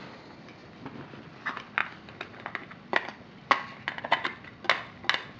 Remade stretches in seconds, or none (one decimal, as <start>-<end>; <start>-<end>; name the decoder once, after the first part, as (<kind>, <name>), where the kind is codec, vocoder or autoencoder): none